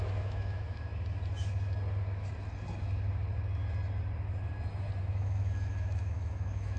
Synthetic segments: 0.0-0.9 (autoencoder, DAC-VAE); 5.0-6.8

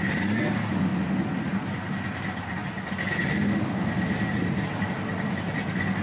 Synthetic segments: none

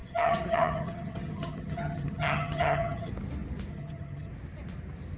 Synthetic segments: 0.0-3.1 (vocoder, HiFi-GAN); 3.7-4.3